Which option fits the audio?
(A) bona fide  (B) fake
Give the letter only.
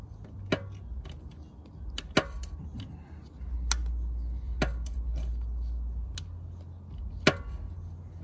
A